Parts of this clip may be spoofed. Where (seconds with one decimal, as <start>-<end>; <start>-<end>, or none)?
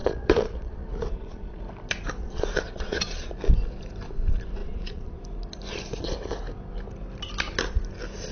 0.0-1.6; 2.2-3.3; 4.6-5.2